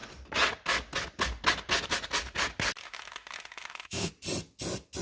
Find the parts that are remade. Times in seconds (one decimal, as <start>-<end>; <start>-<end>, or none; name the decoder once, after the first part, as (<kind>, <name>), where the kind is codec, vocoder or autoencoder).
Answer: 2.8-4.1 (autoencoder, DAC-VAE)